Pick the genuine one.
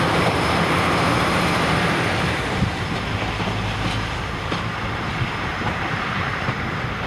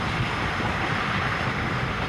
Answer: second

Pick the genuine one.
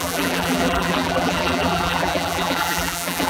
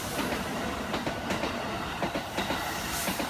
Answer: second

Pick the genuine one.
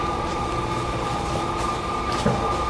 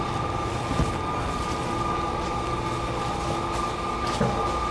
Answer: second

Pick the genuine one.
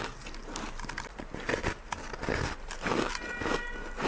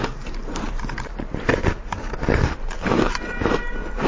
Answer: first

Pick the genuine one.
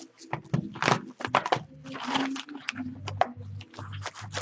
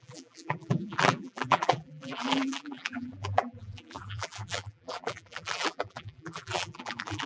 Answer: first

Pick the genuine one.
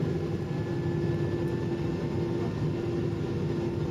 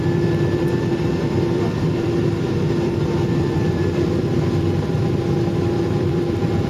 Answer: first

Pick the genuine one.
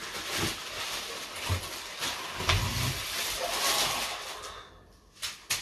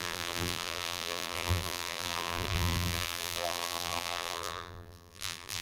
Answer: first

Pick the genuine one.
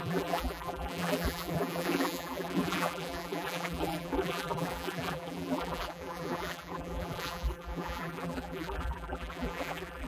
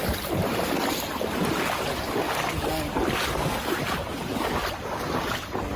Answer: second